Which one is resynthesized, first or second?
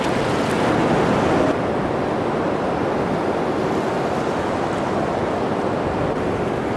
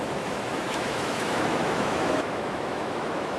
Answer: second